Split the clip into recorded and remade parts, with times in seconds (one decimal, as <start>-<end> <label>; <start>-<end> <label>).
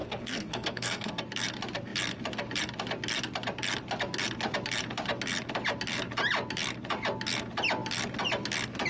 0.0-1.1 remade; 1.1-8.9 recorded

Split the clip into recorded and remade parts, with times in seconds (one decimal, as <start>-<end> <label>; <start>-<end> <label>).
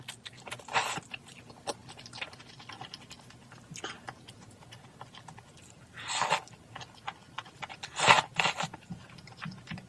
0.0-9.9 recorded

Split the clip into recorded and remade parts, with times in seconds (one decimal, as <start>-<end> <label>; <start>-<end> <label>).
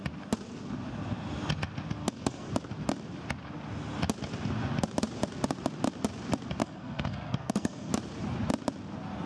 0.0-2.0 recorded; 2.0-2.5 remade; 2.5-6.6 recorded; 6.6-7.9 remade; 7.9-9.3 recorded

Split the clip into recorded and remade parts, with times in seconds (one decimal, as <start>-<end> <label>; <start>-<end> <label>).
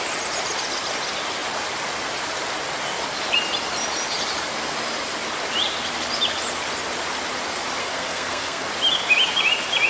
0.0-7.8 recorded; 7.8-8.7 remade; 8.7-9.9 recorded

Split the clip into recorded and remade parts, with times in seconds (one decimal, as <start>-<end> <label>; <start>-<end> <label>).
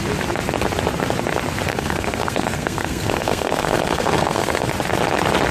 0.0-1.7 recorded; 1.7-4.7 remade; 4.7-5.5 recorded